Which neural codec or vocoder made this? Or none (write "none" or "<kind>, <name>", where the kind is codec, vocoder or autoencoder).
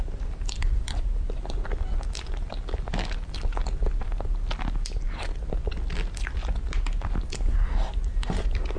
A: none